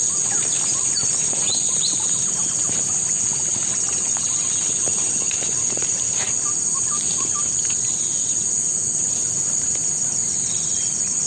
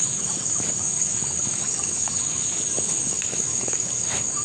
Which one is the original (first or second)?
first